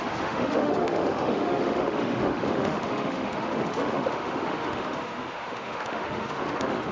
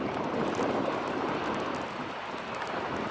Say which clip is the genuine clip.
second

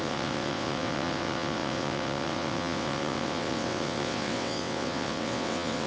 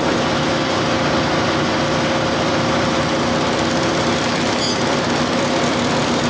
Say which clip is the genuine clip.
second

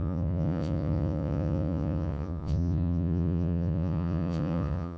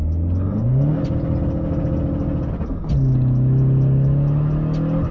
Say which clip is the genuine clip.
second